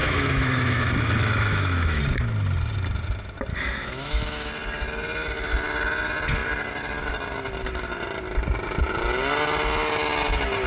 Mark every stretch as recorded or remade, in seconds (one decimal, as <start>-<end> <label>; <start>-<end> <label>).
0.0-2.0 remade; 2.0-3.5 recorded; 3.5-4.5 remade; 4.5-10.7 recorded